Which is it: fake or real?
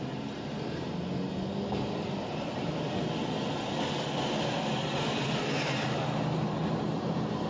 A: real